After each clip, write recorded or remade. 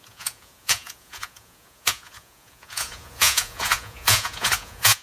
remade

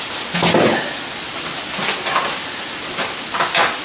recorded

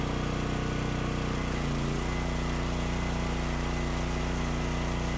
recorded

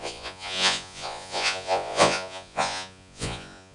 remade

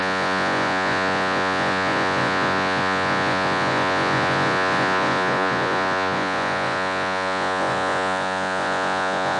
remade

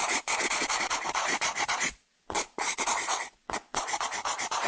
remade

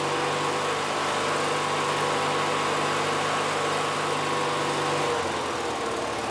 recorded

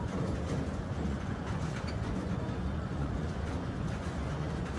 remade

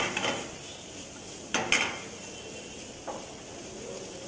recorded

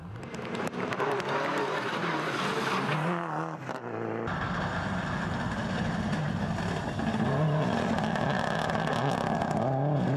recorded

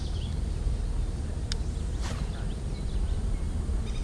recorded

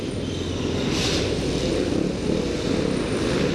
recorded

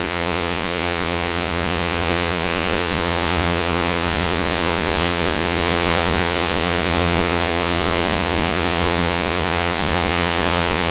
remade